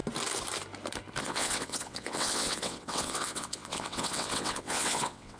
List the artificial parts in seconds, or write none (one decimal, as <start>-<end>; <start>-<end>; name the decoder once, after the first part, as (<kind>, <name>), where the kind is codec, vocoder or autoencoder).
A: 1.2-5.4 (vocoder, WaveNeXt)